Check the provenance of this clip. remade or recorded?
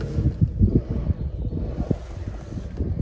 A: recorded